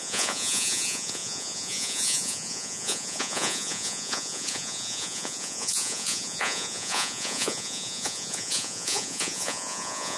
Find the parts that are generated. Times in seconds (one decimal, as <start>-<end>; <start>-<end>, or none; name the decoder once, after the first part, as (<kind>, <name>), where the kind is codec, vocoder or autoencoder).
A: 0.0-10.2 (vocoder, Vocos)